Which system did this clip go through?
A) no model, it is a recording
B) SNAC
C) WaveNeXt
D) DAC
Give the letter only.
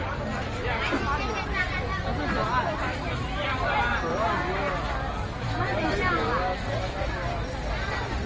A